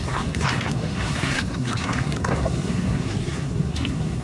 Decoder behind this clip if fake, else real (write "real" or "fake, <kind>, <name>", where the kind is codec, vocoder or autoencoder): fake, codec, SNAC